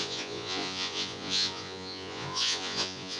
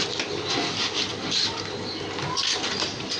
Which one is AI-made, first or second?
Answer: first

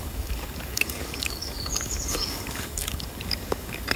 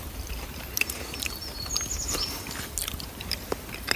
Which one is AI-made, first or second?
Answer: first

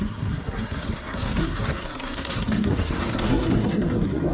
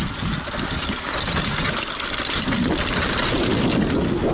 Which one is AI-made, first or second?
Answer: first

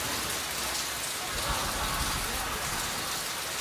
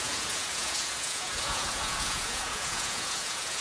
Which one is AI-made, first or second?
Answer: second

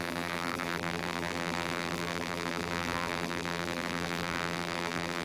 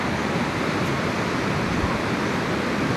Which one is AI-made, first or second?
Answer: first